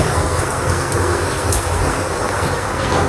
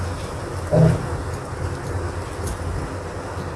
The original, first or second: second